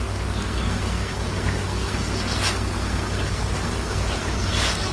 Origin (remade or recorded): remade